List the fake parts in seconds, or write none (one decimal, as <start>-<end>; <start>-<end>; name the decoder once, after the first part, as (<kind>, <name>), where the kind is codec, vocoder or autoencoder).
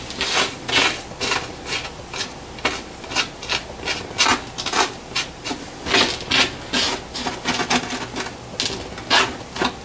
none